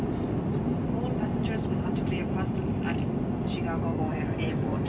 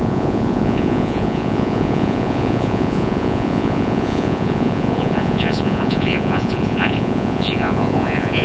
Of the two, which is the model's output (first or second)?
second